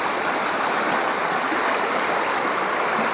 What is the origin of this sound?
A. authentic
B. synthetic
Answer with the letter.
A